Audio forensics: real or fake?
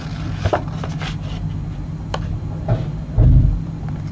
real